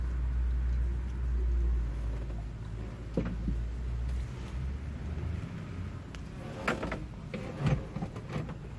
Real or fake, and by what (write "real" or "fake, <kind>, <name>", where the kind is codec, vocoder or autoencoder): real